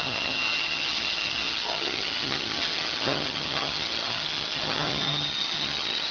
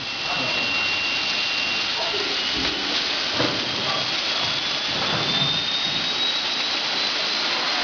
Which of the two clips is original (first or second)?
second